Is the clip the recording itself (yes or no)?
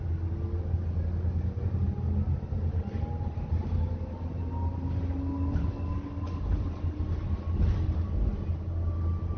yes